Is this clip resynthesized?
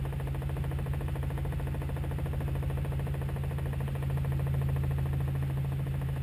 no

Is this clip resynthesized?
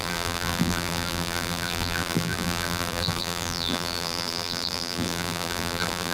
yes